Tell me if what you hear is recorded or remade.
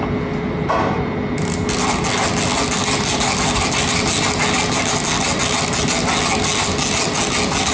recorded